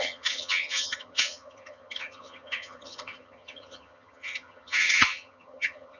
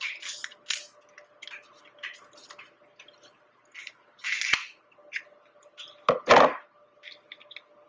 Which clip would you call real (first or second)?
second